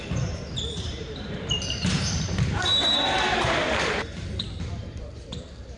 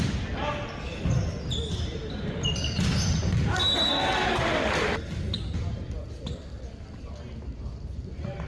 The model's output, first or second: first